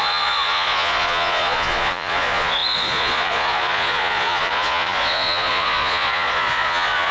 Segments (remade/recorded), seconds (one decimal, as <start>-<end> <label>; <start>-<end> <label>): 0.0-7.1 remade